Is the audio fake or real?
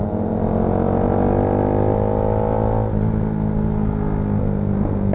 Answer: real